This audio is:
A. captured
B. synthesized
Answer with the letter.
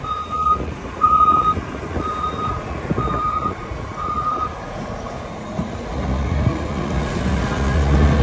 B